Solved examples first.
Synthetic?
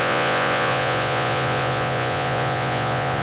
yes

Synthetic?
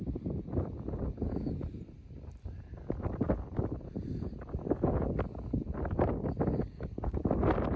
no